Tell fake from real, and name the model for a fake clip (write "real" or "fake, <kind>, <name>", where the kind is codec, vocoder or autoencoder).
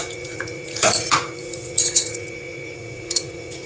fake, vocoder, Vocos